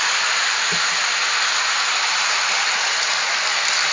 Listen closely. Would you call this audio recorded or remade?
recorded